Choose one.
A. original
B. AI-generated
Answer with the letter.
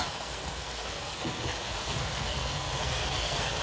B